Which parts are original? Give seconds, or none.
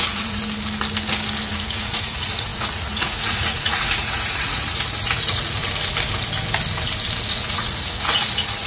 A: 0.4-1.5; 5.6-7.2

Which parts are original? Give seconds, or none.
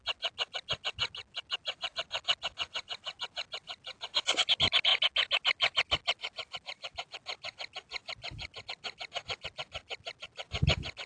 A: 0.0-11.1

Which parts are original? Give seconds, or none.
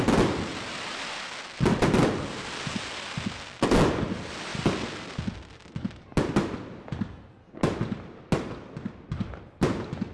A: 0.0-10.1